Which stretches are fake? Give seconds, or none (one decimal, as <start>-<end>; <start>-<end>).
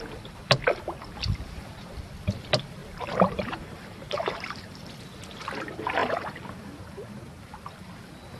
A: 2.8-4.6